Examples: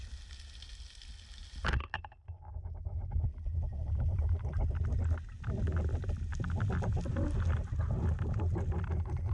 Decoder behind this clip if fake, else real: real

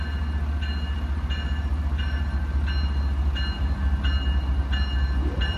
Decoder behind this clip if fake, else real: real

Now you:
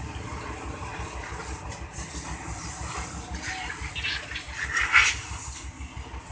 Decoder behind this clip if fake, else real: real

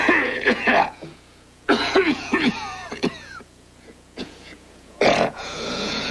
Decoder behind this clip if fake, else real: fake, vocoder, Vocos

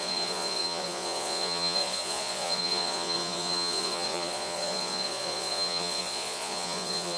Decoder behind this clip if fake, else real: fake, vocoder, Vocos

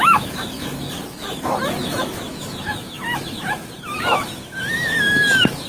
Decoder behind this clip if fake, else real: fake, autoencoder, DAC-VAE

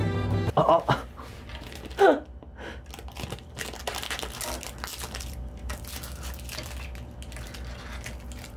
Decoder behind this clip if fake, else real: real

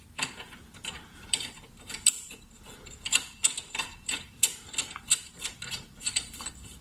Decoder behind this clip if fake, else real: fake, vocoder, BigVGAN v2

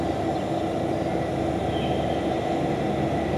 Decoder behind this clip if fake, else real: real